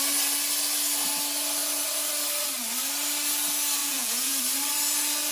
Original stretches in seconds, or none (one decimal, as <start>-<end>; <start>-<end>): 0.0-3.8; 4.4-5.3